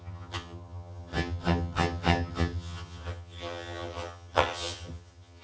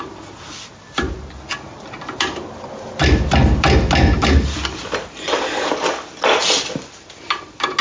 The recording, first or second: second